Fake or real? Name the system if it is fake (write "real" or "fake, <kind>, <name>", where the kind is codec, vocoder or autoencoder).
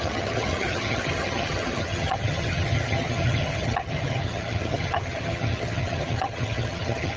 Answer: fake, vocoder, HiFi-GAN